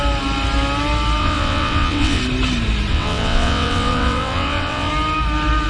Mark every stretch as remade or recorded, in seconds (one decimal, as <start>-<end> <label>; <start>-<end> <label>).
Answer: 0.0-1.2 recorded; 1.2-2.2 remade; 2.2-2.9 recorded; 2.9-4.9 remade; 4.9-5.7 recorded